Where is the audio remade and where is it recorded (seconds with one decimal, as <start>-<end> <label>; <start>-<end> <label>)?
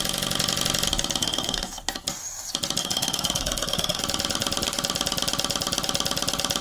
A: 0.0-1.2 recorded; 1.2-1.8 remade; 1.8-2.8 recorded; 2.8-4.0 remade; 4.0-6.6 recorded